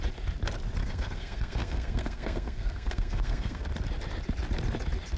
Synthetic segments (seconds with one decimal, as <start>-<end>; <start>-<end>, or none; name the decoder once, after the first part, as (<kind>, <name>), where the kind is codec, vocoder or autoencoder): 0.8-3.7 (codec, SNAC)